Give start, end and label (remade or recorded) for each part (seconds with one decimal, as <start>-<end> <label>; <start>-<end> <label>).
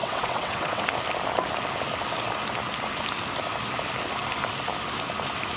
0.0-0.8 remade; 0.8-5.6 recorded